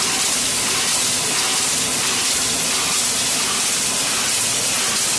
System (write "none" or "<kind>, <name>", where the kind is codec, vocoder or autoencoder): none